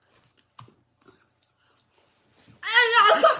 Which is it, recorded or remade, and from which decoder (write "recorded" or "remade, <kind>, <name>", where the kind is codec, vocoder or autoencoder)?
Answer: recorded